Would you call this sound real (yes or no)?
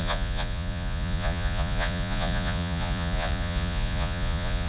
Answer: no